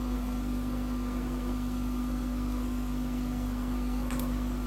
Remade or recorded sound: remade